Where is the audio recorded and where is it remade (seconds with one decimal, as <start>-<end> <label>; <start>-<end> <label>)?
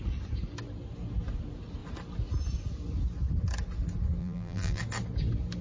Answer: 0.0-4.2 recorded; 4.2-4.8 remade; 4.8-5.6 recorded